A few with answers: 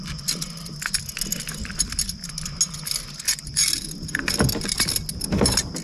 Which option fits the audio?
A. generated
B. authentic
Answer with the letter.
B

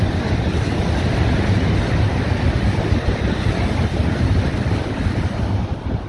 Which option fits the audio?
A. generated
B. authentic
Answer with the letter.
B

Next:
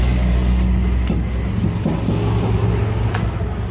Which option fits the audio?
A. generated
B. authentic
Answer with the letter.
B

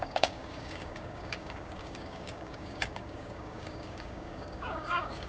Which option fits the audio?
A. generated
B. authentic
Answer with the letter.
A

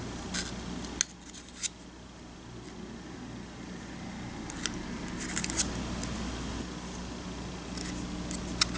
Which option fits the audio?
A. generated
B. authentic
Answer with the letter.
B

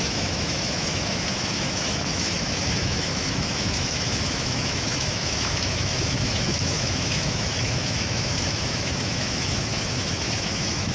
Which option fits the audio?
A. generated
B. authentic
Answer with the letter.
A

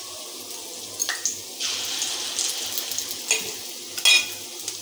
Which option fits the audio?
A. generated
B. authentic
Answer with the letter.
B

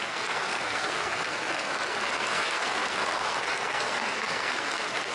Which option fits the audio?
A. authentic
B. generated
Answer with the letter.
B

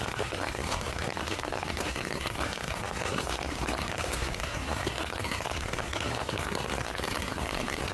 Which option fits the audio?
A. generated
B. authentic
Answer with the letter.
A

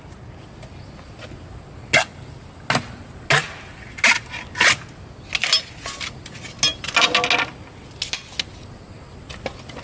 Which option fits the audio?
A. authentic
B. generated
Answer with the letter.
A